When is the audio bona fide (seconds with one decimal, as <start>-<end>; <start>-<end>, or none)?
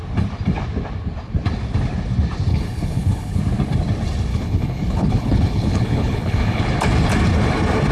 0.0-2.5; 3.4-4.3; 6.6-7.9